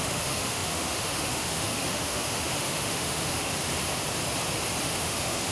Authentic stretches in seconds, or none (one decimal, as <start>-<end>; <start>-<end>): 3.7-4.8